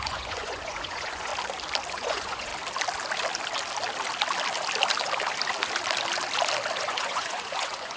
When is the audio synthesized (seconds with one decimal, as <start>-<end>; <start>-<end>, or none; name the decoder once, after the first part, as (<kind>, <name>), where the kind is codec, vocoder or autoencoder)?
0.0-1.3 (vocoder, Vocos); 1.9-2.5; 6.8-8.0